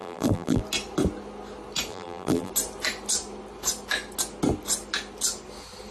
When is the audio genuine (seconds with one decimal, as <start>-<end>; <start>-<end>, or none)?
0.6-1.9; 2.5-5.9